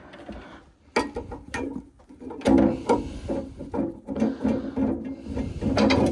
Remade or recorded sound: recorded